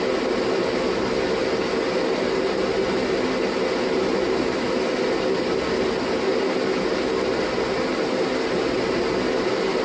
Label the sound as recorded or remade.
recorded